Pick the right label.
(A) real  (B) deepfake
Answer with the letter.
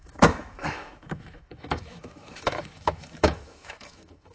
B